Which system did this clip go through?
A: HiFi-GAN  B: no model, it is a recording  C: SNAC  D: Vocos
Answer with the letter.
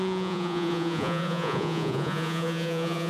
D